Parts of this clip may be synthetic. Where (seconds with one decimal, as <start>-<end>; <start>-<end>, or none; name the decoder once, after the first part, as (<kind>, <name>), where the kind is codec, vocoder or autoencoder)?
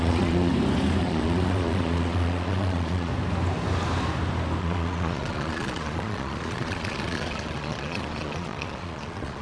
0.0-0.5 (vocoder, Vocos); 1.0-3.1; 4.6-9.4